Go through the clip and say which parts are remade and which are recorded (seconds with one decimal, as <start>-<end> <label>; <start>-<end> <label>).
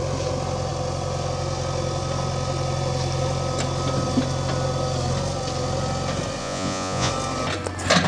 0.0-6.4 recorded; 6.4-7.1 remade; 7.1-8.1 recorded